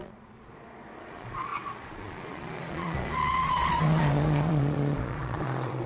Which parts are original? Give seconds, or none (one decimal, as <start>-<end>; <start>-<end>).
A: none